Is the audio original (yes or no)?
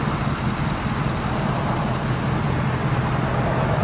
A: yes